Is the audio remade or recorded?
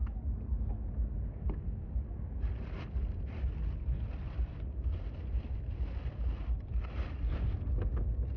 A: recorded